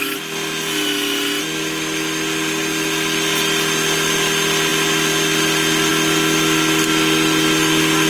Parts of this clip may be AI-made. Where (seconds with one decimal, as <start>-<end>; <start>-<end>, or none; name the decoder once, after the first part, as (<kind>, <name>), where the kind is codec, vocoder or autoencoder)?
none